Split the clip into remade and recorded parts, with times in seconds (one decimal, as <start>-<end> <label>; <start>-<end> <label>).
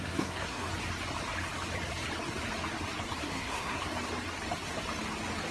0.0-0.7 remade; 0.7-3.2 recorded; 3.2-3.8 remade; 3.8-5.5 recorded